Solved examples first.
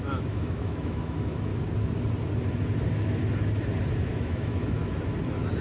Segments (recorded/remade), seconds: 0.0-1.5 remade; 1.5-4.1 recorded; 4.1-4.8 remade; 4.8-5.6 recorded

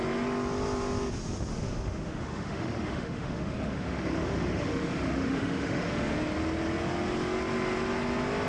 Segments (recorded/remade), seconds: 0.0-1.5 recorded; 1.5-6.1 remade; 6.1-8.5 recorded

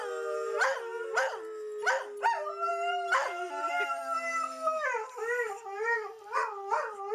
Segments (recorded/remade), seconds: 0.0-7.1 recorded

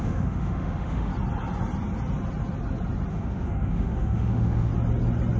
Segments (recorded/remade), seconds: 0.0-1.1 remade; 1.1-3.1 recorded; 3.1-4.7 remade; 4.7-5.4 recorded

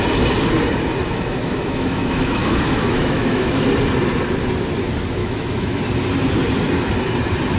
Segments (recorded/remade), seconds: 0.0-1.0 recorded; 1.0-3.7 remade; 3.7-5.2 recorded; 5.2-5.8 remade; 5.8-7.6 recorded